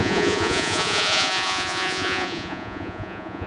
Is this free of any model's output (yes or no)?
no